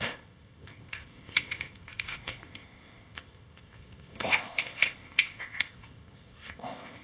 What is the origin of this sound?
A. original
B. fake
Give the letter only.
B